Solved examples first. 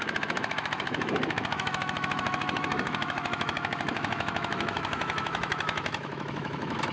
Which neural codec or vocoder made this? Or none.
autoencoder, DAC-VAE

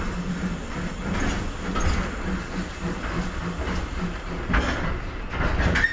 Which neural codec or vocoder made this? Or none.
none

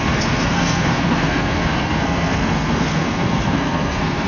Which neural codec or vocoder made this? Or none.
codec, SNAC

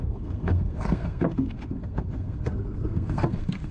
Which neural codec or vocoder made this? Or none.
codec, SNAC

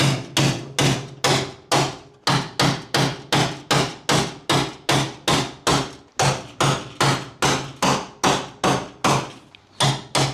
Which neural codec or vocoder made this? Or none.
none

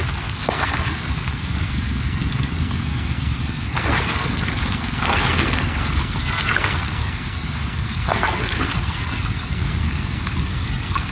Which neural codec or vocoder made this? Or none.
codec, SNAC